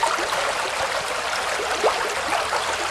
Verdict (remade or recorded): recorded